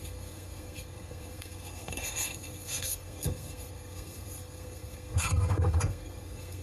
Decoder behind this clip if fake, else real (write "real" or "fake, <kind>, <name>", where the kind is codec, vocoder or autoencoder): fake, codec, SNAC